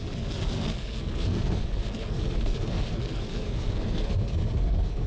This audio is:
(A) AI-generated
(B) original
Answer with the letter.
A